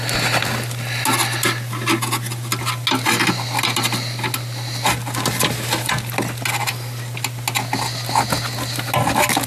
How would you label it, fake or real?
real